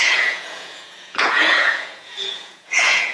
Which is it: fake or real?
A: fake